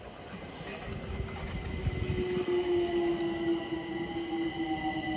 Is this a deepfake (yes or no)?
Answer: no